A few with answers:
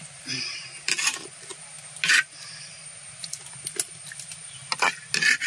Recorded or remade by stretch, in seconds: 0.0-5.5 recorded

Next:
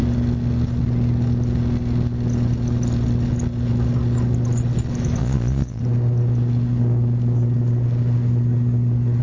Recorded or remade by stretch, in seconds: 0.0-5.2 recorded; 5.2-5.8 remade; 5.8-9.2 recorded

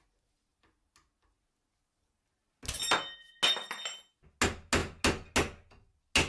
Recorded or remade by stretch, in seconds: 0.0-6.3 recorded

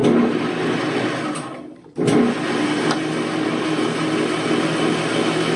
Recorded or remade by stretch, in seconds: 0.0-5.6 recorded

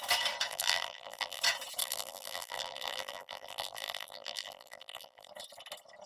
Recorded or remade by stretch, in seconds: 0.0-0.5 recorded; 0.5-1.4 remade; 1.4-1.8 recorded; 1.8-5.3 remade; 5.3-6.1 recorded

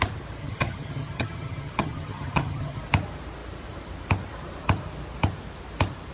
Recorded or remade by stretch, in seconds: 0.0-0.4 recorded; 0.4-2.8 remade; 2.8-6.1 recorded

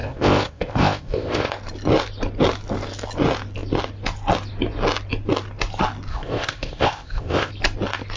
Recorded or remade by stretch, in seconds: 0.0-1.5 remade; 1.5-6.1 recorded; 6.1-7.5 remade; 7.5-8.2 recorded

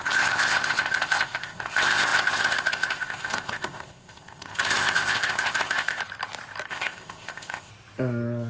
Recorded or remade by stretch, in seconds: 0.0-6.0 remade; 6.0-6.7 recorded; 6.7-7.7 remade; 7.7-8.5 recorded